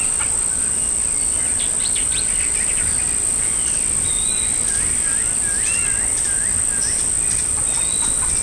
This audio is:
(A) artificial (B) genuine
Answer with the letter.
B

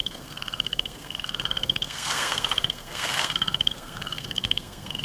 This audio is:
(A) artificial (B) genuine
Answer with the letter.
A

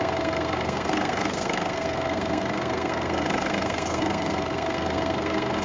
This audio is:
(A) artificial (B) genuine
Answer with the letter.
A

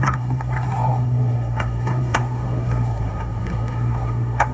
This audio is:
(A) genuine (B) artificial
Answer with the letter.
B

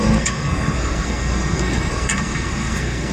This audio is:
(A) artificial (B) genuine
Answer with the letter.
A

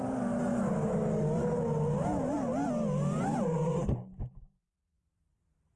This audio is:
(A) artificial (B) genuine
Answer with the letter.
B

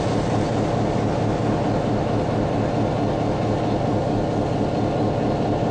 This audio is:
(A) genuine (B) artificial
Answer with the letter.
A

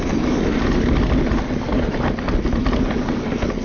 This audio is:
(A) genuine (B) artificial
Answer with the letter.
A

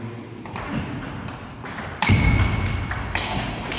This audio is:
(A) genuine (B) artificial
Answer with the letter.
A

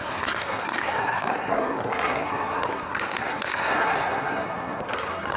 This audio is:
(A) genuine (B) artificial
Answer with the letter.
B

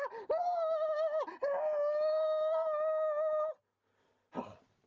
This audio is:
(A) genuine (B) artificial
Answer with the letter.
A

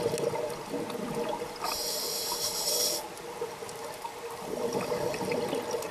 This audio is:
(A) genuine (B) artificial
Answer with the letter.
A